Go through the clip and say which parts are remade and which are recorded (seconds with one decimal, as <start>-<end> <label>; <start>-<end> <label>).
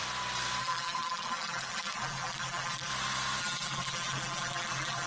0.0-0.6 recorded; 0.6-2.9 remade; 2.9-3.4 recorded; 3.4-5.1 remade